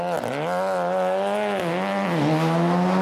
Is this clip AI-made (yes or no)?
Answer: no